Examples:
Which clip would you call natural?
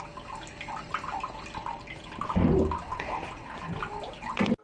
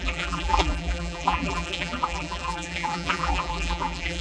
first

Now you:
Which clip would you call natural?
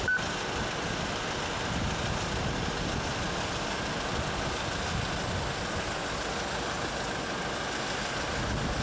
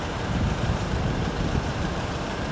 first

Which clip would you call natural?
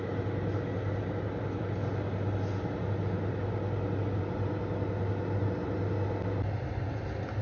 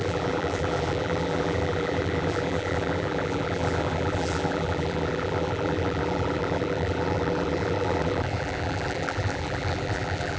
first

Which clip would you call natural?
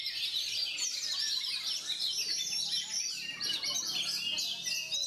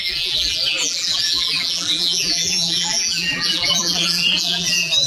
first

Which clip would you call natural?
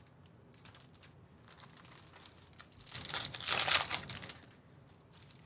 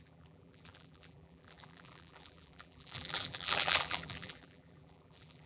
first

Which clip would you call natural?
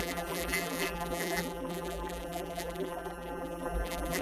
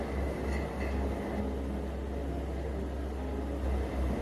second